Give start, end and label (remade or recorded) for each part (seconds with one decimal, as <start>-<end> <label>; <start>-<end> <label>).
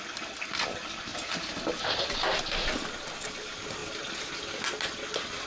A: 0.0-5.5 recorded